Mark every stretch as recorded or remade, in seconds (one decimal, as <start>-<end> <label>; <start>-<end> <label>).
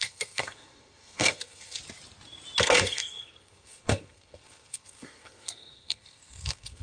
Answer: 0.0-1.8 remade; 1.8-2.6 recorded; 2.6-6.8 remade